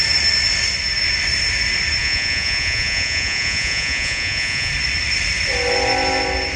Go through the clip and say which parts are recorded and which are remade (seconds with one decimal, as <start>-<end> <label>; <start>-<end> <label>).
0.0-2.0 recorded; 2.0-4.7 remade; 4.7-6.6 recorded